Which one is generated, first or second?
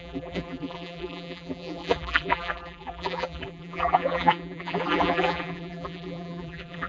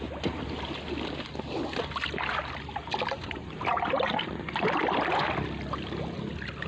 first